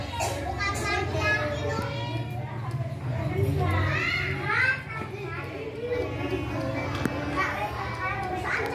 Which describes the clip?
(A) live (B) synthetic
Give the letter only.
A